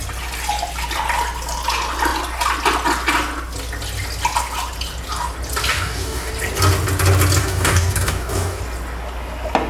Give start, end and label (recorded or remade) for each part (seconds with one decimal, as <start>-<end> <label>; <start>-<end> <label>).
0.0-5.7 recorded; 5.7-6.3 remade; 6.3-7.4 recorded; 7.4-8.6 remade; 8.6-9.7 recorded